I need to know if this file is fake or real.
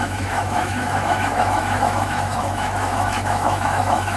fake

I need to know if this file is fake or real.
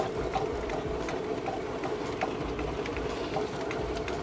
real